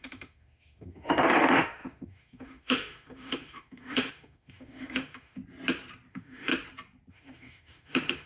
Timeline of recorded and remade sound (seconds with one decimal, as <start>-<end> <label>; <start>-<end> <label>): 0.0-5.4 remade; 5.4-6.1 recorded; 6.1-6.5 remade; 6.5-7.1 recorded; 7.1-8.3 remade